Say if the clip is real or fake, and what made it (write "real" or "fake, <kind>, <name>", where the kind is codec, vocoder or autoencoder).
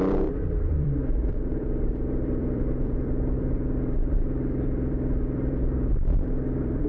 fake, vocoder, BigVGAN v2